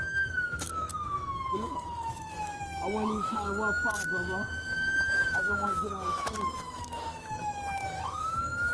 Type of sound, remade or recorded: remade